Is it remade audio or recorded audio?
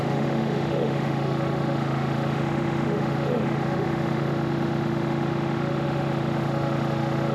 remade